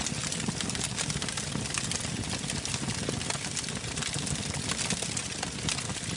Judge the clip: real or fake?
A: real